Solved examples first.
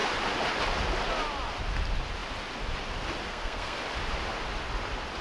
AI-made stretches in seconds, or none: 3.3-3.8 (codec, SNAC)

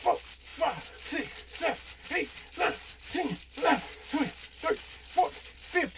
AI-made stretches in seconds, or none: none

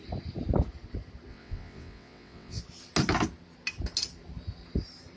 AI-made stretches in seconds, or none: 1.3-2.6 (vocoder, WaveNeXt)

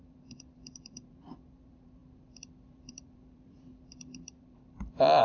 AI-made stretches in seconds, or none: 0.0-5.2 (vocoder, BigVGAN v2)

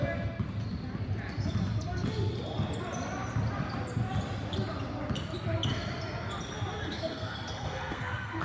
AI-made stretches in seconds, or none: 6.8-8.4 (codec, SNAC)

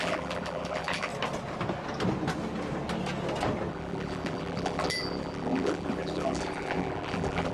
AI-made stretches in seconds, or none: 0.0-1.1 (vocoder, BigVGAN v2); 3.7-7.5

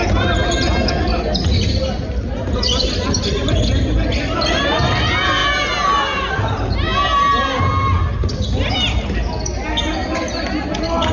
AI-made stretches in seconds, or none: none